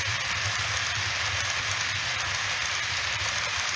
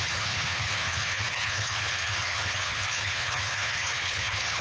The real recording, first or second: first